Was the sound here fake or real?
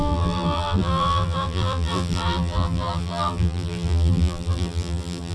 fake